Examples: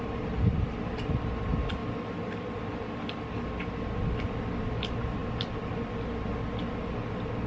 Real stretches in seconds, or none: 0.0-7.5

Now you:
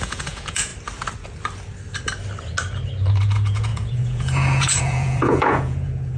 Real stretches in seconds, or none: 0.7-3.1

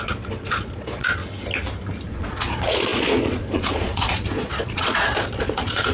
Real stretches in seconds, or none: 1.2-2.1

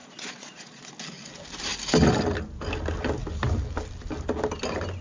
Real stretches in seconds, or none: 0.9-5.0

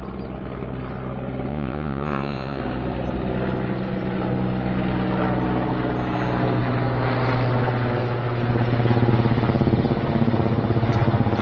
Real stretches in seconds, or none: 0.0-1.5; 2.6-11.4

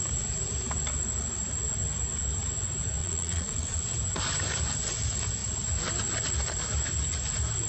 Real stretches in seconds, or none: 0.0-3.0; 3.8-7.7

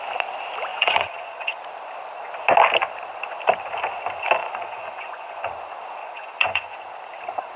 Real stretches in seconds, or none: 0.0-0.7; 1.6-4.4; 5.5-6.0; 6.7-7.6

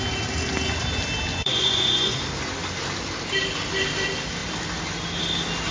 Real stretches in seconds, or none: 0.0-1.3; 2.2-5.7